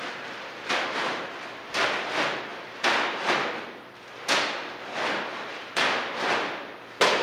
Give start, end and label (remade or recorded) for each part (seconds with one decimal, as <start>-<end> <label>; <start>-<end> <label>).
0.0-2.5 recorded; 2.5-3.3 remade; 3.3-5.3 recorded; 5.3-6.2 remade; 6.2-7.2 recorded